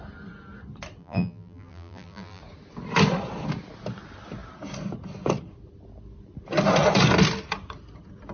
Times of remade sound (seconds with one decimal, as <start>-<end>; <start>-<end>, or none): 1.0-2.4